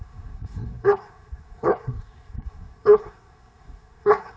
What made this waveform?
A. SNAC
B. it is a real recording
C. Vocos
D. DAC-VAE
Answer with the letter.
A